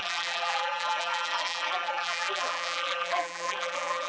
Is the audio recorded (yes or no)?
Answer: no